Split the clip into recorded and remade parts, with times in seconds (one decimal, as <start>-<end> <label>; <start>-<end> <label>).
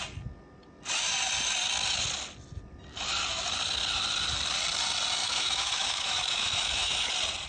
0.0-5.2 recorded; 5.2-7.1 remade; 7.1-7.5 recorded